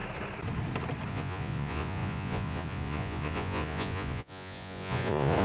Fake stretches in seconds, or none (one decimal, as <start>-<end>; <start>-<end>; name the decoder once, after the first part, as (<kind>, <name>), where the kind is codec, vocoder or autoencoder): 1.1-5.4 (vocoder, Vocos)